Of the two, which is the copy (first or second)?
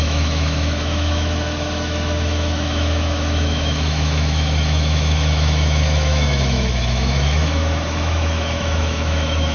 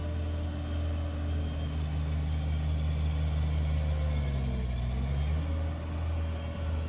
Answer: first